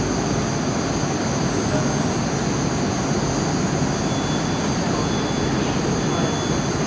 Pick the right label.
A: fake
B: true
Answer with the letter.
B